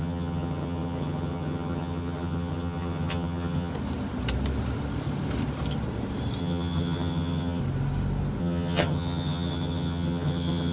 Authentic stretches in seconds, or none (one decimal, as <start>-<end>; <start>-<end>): 3.7-6.4; 7.6-8.4